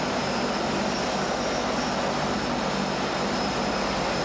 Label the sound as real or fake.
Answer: real